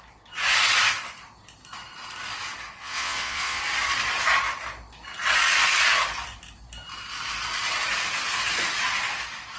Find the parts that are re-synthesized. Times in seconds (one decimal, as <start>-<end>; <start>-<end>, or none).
2.8-3.6